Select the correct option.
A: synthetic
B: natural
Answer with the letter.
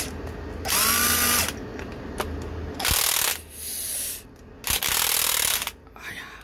B